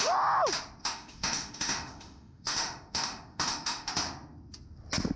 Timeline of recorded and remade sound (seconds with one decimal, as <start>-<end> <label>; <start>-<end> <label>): 0.0-0.8 recorded; 0.8-3.9 remade; 3.9-5.2 recorded